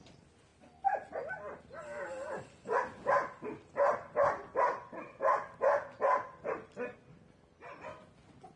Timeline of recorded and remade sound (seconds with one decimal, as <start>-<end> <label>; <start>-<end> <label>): 0.0-8.6 recorded